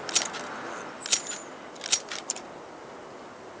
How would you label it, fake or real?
real